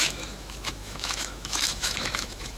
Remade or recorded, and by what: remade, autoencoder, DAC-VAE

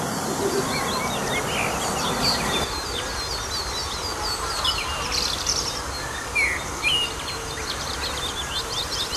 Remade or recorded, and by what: recorded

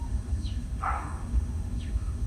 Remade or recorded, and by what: remade, autoencoder, DAC-VAE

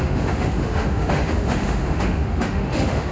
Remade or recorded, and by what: remade, autoencoder, DAC-VAE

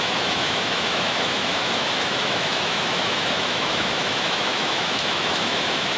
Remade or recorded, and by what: remade, autoencoder, DAC-VAE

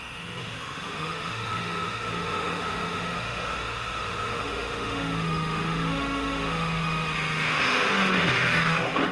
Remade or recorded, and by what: remade, autoencoder, DAC-VAE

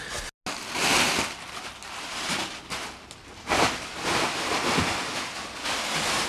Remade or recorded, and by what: recorded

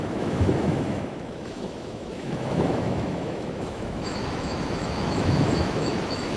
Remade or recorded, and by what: remade, autoencoder, DAC-VAE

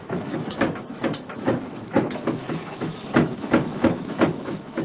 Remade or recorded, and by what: remade, autoencoder, DAC-VAE